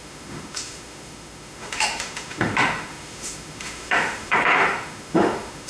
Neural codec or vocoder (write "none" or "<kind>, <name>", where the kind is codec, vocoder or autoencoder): autoencoder, DAC-VAE